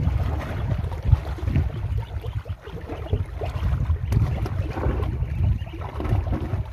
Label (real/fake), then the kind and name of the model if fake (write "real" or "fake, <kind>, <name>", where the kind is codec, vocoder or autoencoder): real